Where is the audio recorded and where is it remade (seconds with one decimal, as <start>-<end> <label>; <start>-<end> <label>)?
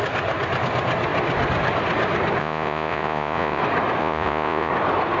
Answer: 0.0-2.4 recorded; 2.4-3.6 remade; 3.6-4.0 recorded; 4.0-4.7 remade; 4.7-5.2 recorded